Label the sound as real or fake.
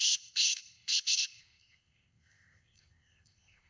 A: fake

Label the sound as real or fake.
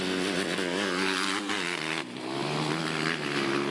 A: real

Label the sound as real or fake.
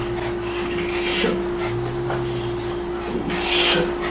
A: real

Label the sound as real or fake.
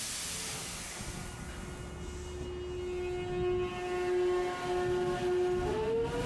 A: real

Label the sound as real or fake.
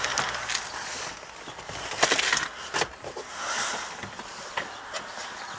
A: real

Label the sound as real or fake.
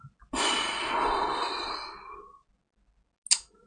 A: real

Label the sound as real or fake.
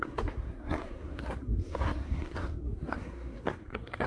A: fake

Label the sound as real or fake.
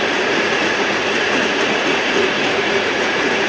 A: fake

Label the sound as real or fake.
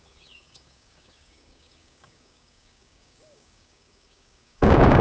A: fake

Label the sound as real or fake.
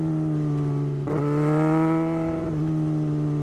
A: real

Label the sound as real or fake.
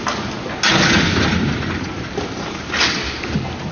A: real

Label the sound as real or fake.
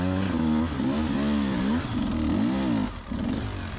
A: real